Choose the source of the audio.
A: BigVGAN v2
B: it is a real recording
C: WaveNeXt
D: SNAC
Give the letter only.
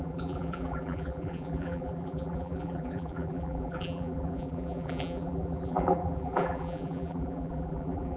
A